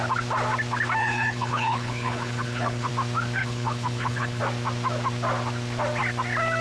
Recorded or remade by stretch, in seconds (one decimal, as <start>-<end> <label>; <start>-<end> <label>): 0.0-1.0 recorded; 1.0-2.9 remade; 2.9-3.4 recorded; 3.4-4.4 remade; 4.4-6.6 recorded